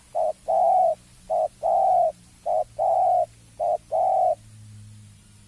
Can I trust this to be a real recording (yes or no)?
yes